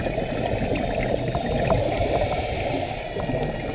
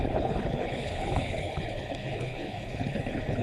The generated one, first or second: second